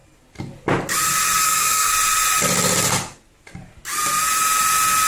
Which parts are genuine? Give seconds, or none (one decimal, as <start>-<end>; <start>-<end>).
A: 0.0-1.4; 1.9-5.1